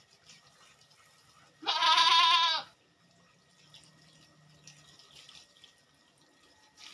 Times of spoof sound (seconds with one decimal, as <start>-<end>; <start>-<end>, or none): none